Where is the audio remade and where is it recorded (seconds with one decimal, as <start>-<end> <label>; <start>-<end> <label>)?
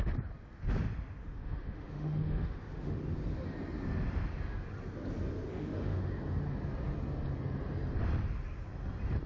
0.0-1.2 recorded; 1.2-3.0 remade; 3.0-5.5 recorded; 5.5-6.1 remade; 6.1-9.3 recorded